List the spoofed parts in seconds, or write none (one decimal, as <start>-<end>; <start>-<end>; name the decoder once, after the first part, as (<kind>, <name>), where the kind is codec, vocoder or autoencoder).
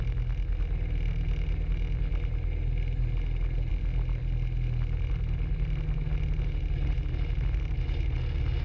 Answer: none